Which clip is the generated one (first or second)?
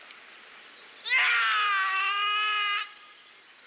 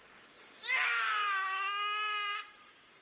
second